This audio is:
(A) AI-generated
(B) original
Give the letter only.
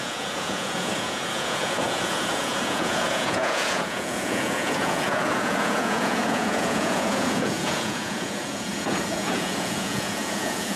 A